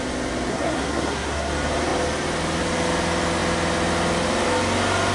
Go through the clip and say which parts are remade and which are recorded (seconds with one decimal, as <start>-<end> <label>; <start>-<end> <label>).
0.0-0.5 recorded; 0.5-1.5 remade; 1.5-5.1 recorded

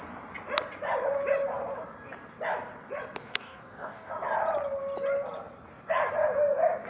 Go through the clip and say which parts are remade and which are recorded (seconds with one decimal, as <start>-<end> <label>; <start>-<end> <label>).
0.0-3.2 recorded; 3.2-4.1 remade; 4.1-6.9 recorded

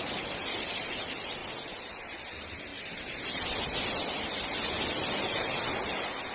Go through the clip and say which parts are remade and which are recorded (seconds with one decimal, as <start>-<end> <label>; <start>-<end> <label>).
0.0-6.3 recorded

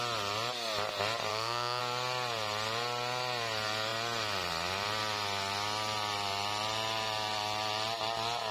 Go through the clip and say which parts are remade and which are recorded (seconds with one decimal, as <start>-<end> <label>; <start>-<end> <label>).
0.0-1.3 recorded; 1.3-1.8 remade; 1.8-8.5 recorded

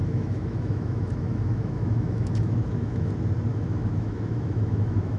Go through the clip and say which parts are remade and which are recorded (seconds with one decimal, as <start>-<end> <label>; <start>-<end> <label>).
0.0-3.1 remade; 3.1-3.5 recorded; 3.5-5.2 remade

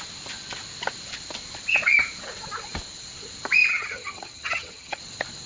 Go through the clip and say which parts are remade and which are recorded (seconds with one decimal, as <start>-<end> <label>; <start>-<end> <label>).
0.0-3.7 recorded; 3.7-5.0 remade; 5.0-5.5 recorded

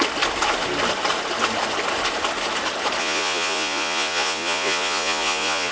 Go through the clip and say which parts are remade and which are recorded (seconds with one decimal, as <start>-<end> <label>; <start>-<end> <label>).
0.0-3.0 recorded; 3.0-5.7 remade